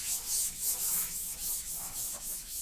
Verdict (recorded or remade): remade